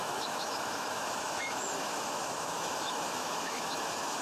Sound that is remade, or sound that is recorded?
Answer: remade